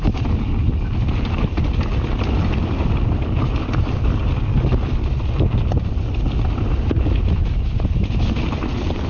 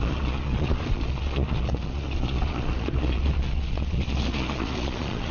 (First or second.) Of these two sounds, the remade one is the second